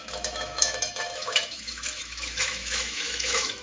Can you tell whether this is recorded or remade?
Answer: remade